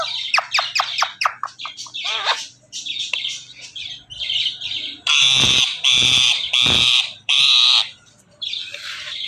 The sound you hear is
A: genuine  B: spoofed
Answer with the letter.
B